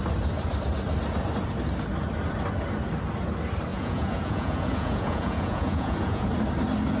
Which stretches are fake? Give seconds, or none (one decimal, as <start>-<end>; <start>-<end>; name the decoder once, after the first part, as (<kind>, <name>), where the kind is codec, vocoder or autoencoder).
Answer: 3.7-6.3 (vocoder, Vocos)